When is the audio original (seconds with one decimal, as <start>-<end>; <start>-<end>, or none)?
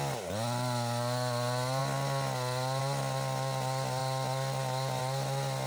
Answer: 0.0-5.7